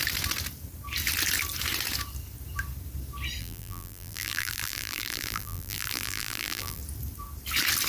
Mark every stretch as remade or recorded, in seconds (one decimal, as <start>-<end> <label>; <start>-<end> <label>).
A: 0.0-3.4 recorded; 3.4-6.8 remade; 6.8-7.9 recorded

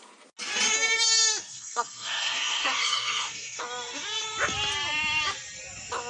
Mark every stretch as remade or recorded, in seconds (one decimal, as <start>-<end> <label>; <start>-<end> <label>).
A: 0.0-1.4 recorded; 1.4-3.6 remade; 3.6-6.1 recorded

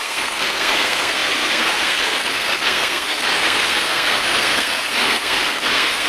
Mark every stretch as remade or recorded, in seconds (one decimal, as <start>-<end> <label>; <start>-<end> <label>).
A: 0.0-6.1 remade

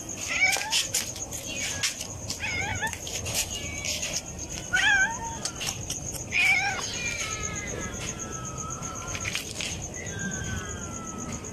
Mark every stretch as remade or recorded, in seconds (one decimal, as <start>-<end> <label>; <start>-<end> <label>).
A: 0.0-11.5 recorded

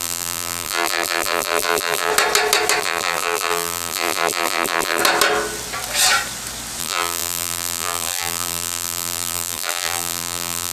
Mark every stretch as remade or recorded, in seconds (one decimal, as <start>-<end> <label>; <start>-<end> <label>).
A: 0.0-2.1 remade; 2.1-2.8 recorded; 2.8-5.0 remade; 5.0-6.8 recorded; 6.8-10.7 remade

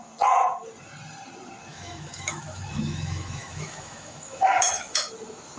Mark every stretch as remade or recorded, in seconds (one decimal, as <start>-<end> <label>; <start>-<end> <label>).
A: 0.0-1.7 recorded; 1.7-5.1 remade; 5.1-5.6 recorded